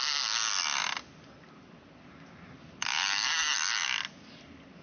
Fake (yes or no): no